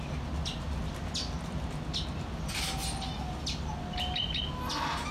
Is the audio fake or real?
real